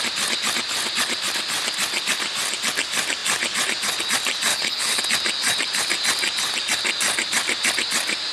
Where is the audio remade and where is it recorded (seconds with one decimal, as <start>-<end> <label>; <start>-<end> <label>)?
0.0-4.5 recorded; 4.5-5.0 remade; 5.0-8.3 recorded